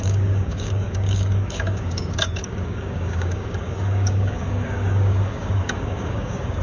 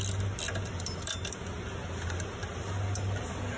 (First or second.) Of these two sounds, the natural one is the second